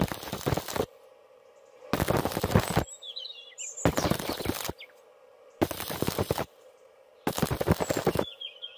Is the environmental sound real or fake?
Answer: real